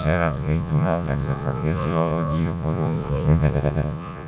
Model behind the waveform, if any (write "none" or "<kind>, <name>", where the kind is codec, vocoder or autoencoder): vocoder, Vocos